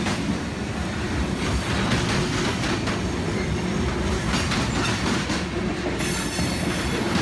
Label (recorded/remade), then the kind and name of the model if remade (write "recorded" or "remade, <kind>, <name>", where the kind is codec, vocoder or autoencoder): recorded